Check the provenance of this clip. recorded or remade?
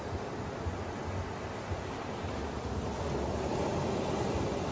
recorded